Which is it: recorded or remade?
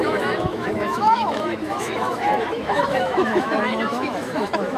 remade